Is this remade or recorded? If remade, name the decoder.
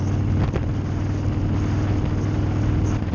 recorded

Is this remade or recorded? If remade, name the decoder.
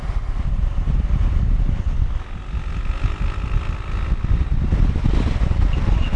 recorded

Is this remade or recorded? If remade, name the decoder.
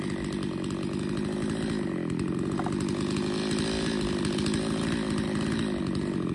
recorded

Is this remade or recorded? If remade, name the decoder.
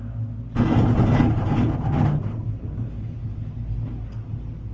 recorded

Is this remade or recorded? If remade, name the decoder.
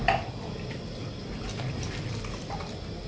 recorded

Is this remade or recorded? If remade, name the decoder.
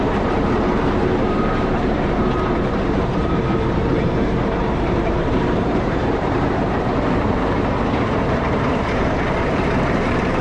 remade, vocoder, BigVGAN v2